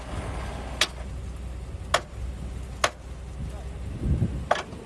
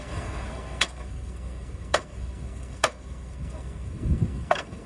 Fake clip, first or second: second